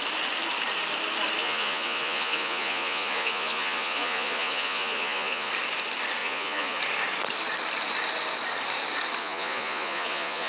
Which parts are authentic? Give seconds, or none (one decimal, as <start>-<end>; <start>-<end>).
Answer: 0.0-1.4; 5.5-6.2; 6.8-9.2